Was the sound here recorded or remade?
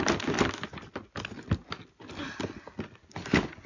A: recorded